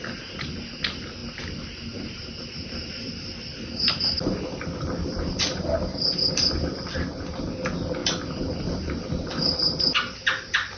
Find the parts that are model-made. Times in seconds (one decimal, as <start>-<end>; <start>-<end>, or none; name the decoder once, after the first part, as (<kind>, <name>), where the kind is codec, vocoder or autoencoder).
none